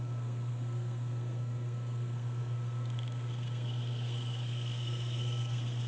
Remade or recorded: remade